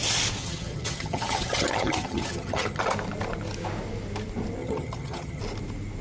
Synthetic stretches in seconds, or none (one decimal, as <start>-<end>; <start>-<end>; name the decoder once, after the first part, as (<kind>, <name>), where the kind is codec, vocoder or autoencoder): 0.4-2.8 (vocoder, HiFi-GAN); 4.6-5.4